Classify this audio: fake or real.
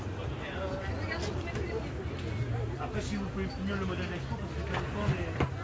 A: real